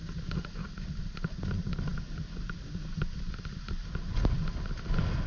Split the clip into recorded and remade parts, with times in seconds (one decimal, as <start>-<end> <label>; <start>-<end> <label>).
0.0-5.3 recorded